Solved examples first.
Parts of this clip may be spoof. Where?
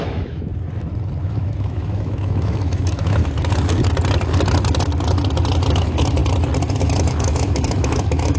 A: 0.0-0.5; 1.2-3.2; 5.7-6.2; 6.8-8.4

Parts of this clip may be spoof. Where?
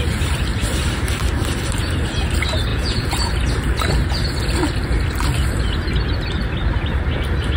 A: 2.7-3.3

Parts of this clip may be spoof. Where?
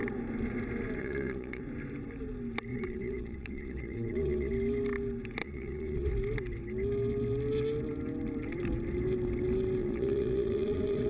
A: 1.0-1.6; 2.7-4.5; 5.4-6.1; 9.8-11.1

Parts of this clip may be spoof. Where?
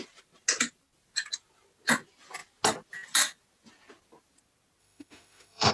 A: 4.8-5.7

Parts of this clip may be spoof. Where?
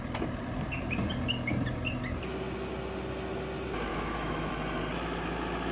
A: 3.9-4.5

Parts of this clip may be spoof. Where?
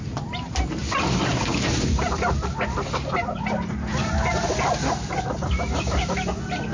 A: none